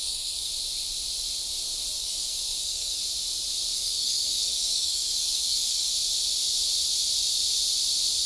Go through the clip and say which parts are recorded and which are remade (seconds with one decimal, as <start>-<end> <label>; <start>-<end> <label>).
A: 0.0-0.5 remade; 0.5-2.0 recorded; 2.0-3.0 remade; 3.0-3.7 recorded; 3.7-5.9 remade; 5.9-8.3 recorded